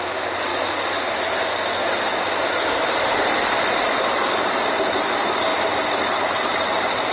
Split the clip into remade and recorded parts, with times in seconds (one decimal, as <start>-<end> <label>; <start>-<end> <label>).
0.0-0.5 recorded; 0.5-1.1 remade; 1.1-5.5 recorded; 5.5-7.1 remade